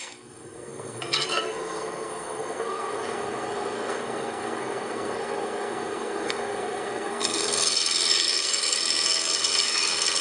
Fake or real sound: fake